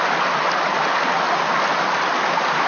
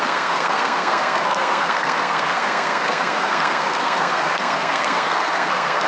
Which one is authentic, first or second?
first